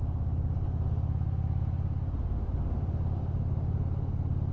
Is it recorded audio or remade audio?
recorded